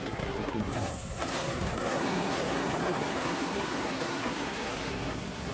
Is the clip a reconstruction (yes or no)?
yes